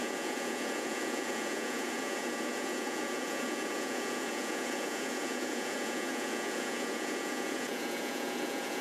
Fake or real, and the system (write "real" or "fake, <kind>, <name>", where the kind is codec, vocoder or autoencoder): fake, vocoder, Vocos